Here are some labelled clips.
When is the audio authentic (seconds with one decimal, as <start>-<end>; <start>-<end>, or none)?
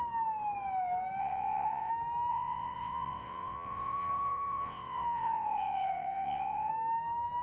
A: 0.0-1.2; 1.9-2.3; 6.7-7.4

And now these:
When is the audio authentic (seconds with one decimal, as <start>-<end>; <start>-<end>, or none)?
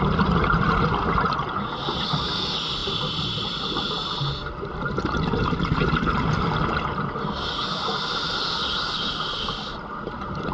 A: 0.0-10.5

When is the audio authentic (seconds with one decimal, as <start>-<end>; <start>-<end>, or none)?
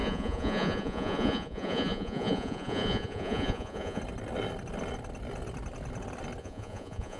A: 4.0-6.4